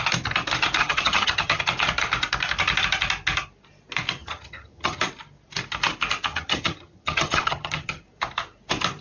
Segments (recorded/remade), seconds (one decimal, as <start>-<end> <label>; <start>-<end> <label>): 0.0-0.8 recorded; 0.8-1.6 remade; 1.6-4.2 recorded; 4.2-5.0 remade; 5.0-6.3 recorded; 6.3-8.0 remade; 8.0-9.0 recorded